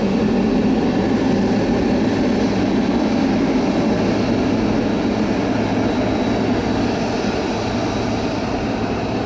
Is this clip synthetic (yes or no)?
no